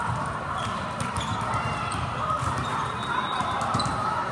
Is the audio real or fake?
fake